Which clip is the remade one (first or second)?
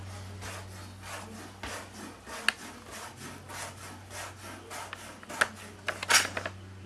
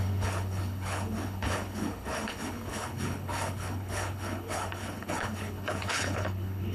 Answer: second